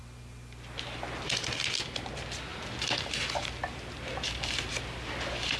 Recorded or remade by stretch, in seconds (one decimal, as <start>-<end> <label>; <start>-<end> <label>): 0.0-5.6 recorded